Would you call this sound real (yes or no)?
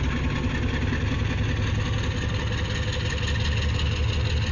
yes